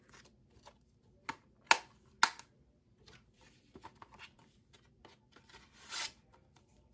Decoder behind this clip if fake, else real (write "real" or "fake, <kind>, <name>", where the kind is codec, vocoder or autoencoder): real